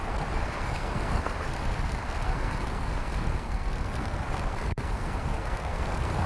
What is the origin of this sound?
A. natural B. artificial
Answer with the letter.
B